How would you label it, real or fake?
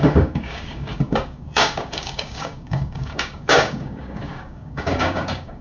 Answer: fake